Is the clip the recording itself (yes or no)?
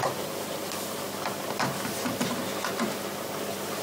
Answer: no